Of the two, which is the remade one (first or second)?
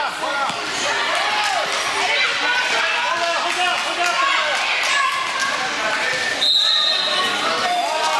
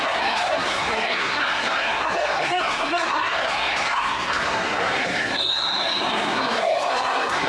second